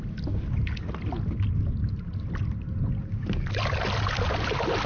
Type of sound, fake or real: real